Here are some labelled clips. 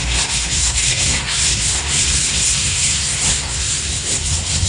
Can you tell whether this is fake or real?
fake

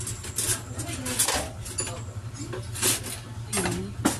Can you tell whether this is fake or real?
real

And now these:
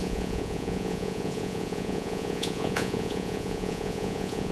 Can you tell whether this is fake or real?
fake